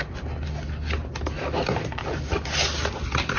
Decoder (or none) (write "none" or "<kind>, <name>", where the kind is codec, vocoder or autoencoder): none